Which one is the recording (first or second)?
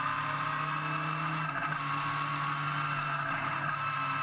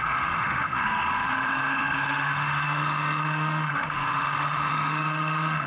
first